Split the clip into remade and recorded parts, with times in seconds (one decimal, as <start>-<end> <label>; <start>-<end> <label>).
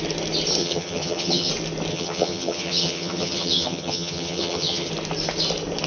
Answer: 0.0-0.6 recorded; 0.6-1.5 remade; 1.5-1.9 recorded; 1.9-4.9 remade; 4.9-5.9 recorded